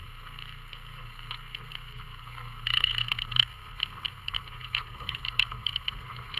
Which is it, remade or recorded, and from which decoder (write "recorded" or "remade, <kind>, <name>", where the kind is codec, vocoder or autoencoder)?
remade, codec, SNAC